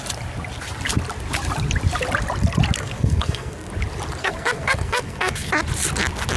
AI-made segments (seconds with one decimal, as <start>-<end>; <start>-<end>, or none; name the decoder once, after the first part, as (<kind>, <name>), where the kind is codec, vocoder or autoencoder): 2.8-3.7 (codec, SNAC); 4.2-5.5